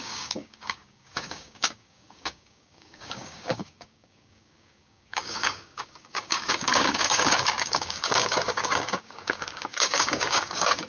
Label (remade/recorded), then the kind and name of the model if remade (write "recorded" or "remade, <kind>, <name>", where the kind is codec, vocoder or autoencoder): remade, codec, DAC